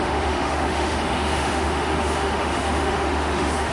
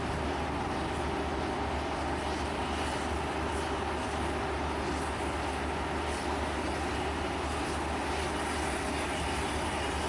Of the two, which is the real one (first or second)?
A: second